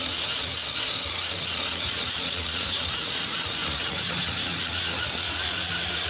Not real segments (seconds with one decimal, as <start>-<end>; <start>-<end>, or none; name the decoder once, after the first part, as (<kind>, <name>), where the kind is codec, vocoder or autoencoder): 0.0-0.5 (vocoder, Vocos); 1.1-6.1